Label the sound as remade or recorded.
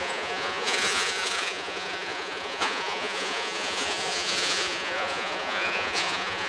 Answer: remade